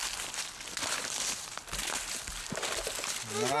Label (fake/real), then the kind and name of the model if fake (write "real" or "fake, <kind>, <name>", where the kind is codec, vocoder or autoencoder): real